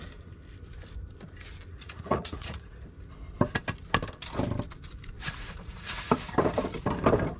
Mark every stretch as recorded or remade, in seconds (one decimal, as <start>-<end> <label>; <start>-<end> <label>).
0.0-1.7 recorded; 1.7-2.8 remade; 2.8-5.4 recorded; 5.4-6.1 remade; 6.1-7.4 recorded